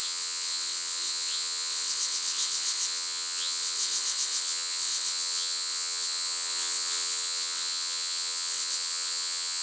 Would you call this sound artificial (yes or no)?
yes